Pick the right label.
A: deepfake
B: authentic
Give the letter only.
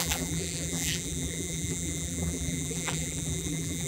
A